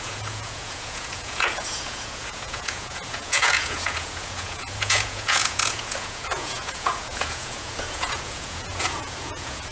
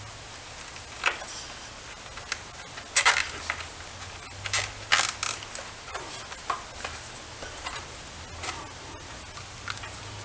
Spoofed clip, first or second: first